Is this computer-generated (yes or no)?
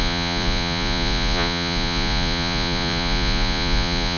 yes